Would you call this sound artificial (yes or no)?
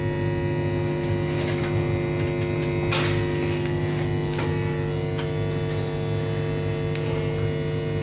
no